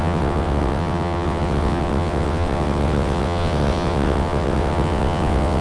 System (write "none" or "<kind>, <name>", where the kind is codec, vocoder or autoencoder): vocoder, WaveNeXt